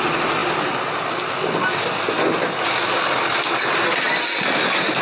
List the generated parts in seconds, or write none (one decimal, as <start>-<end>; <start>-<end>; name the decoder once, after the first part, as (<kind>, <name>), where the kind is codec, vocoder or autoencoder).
none